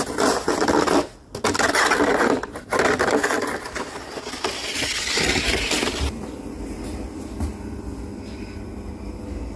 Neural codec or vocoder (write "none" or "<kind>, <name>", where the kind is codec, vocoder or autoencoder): none